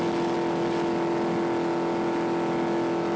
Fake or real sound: real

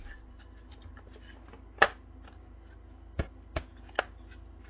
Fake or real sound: real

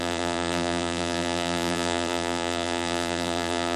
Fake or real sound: fake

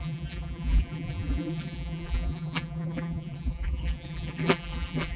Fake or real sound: fake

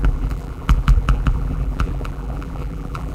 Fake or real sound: fake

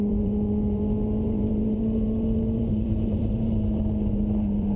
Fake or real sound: fake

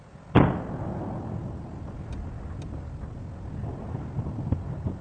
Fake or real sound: real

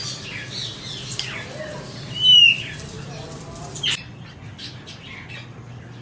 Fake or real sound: real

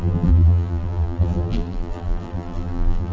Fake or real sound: fake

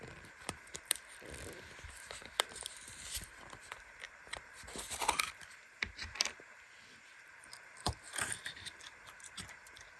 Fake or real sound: fake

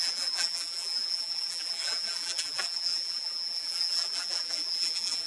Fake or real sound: fake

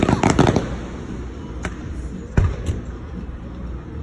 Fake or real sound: real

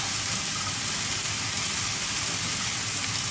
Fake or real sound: real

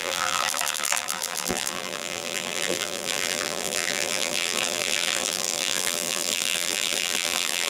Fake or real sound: fake